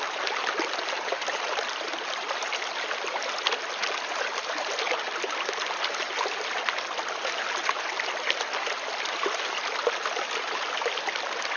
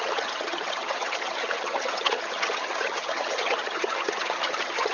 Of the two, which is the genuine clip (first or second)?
first